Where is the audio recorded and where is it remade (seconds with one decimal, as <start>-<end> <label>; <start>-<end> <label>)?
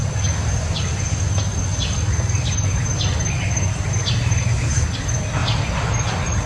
0.0-6.5 recorded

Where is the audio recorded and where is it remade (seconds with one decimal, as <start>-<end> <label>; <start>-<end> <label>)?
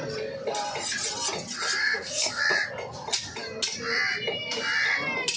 0.0-1.8 recorded; 1.8-2.4 remade; 2.4-5.4 recorded